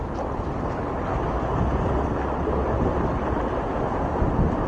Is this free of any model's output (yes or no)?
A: yes